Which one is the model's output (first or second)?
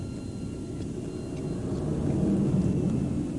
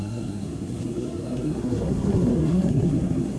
second